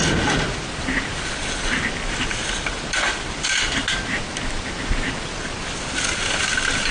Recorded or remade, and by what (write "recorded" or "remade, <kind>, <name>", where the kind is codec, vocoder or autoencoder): recorded